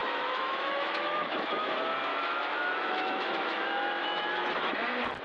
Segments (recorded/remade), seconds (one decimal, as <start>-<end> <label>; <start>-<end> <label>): 0.0-1.7 remade; 1.7-2.1 recorded; 2.1-4.3 remade; 4.3-5.2 recorded